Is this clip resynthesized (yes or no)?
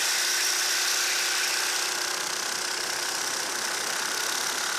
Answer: no